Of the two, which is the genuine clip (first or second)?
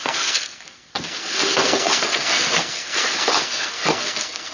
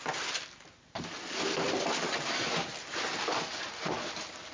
second